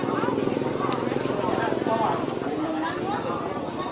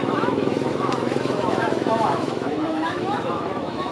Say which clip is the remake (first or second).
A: second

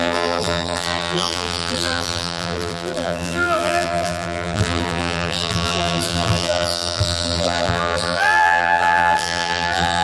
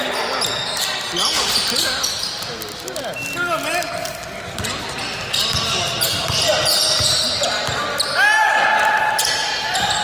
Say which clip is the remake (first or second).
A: first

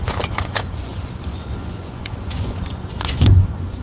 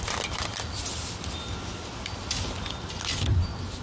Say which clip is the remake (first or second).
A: first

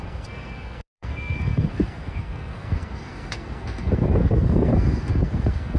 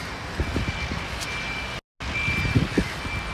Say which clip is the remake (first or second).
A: first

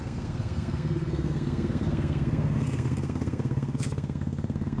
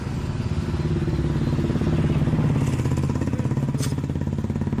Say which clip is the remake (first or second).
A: first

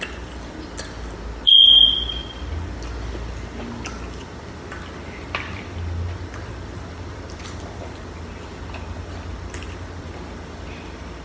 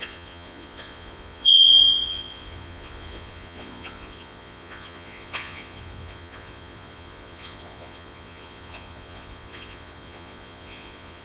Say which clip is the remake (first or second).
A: second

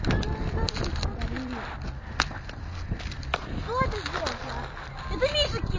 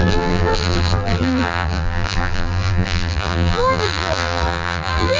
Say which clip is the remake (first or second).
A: second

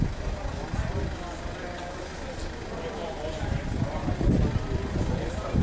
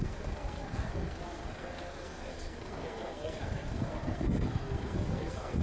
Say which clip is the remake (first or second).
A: second